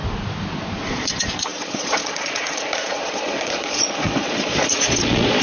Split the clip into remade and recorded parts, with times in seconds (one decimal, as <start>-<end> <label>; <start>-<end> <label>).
0.0-0.9 recorded; 0.9-5.4 remade